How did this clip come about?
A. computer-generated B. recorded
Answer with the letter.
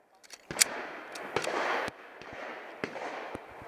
B